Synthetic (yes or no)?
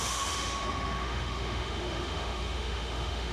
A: yes